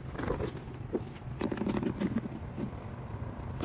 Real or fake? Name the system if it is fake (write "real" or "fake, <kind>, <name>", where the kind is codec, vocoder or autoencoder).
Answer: real